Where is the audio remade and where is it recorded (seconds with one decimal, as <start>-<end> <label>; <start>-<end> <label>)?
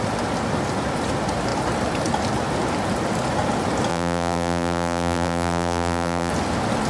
0.0-3.9 recorded; 3.9-6.3 remade; 6.3-6.9 recorded